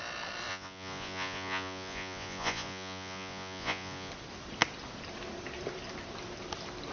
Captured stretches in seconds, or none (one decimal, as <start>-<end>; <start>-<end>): 0.0-0.5; 4.1-6.9